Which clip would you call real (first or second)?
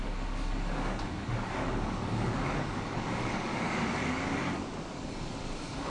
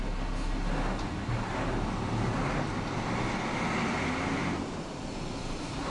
second